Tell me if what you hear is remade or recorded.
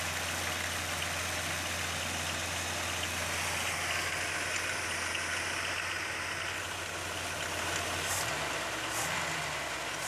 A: recorded